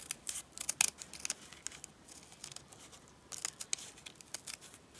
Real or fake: real